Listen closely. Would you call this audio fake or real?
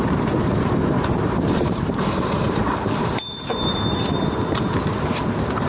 fake